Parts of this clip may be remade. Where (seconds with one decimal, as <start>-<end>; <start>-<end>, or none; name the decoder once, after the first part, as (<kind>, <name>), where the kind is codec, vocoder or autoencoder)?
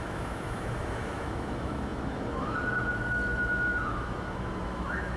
0.0-5.2 (autoencoder, DAC-VAE)